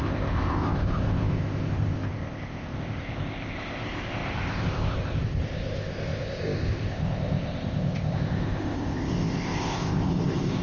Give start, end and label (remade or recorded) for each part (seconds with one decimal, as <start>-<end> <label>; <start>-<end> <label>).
0.0-10.6 remade